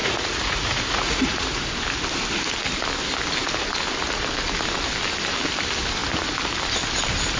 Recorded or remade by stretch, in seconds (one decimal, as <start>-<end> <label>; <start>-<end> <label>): 0.0-1.7 remade; 1.7-7.4 recorded